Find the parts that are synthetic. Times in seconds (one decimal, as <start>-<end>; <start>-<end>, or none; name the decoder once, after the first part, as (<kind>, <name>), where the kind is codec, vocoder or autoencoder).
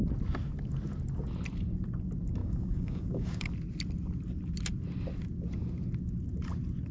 2.4-3.5 (codec, DAC)